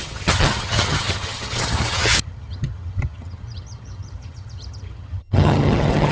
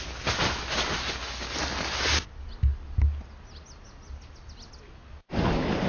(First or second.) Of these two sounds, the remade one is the first